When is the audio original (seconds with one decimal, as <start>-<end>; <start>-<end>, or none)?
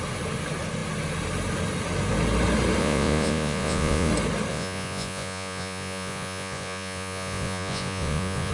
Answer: 0.0-2.8; 4.1-4.5